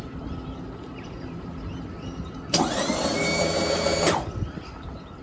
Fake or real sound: fake